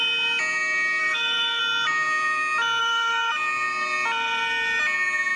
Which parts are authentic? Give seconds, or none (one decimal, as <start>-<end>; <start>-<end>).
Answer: 0.0-1.0; 1.6-2.8; 3.3-5.4